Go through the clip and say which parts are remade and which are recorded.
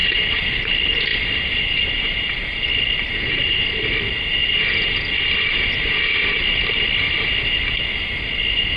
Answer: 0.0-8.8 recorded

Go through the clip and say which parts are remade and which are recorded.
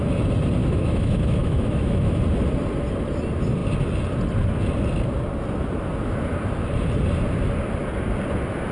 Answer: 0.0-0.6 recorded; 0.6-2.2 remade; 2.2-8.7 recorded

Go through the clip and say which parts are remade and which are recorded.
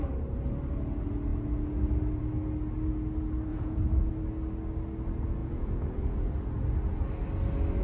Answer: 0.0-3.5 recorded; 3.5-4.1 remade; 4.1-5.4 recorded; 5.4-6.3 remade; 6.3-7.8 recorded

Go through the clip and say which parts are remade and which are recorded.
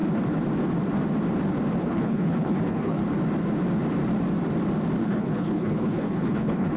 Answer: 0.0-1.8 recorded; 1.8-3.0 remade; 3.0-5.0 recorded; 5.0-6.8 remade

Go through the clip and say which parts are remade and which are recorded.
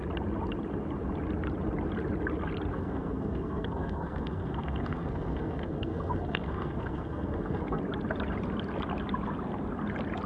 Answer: 0.0-2.7 recorded; 2.7-7.8 remade; 7.8-10.3 recorded